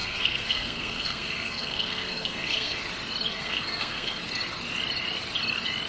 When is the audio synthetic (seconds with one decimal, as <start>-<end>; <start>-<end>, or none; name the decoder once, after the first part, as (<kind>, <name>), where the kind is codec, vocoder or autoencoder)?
0.0-2.8 (codec, SNAC); 3.3-4.2